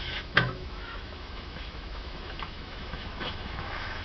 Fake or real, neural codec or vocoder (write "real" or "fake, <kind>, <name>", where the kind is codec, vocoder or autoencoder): fake, autoencoder, DAC-VAE